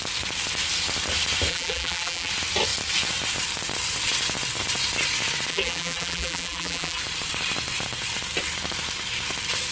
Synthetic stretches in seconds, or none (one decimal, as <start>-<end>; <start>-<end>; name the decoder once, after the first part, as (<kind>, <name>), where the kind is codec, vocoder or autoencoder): 1.5-2.3 (vocoder, BigVGAN v2); 5.5-7.0